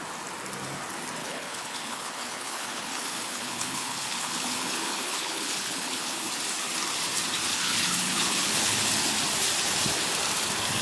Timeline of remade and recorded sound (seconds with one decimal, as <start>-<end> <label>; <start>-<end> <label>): 0.0-1.2 recorded; 1.2-6.3 remade; 6.3-7.5 recorded; 7.5-8.9 remade; 8.9-10.8 recorded